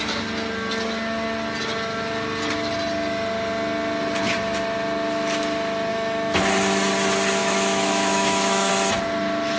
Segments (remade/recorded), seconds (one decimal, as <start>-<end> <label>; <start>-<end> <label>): 0.0-5.9 recorded; 5.9-6.4 remade; 6.4-7.4 recorded; 7.4-8.7 remade; 8.7-9.6 recorded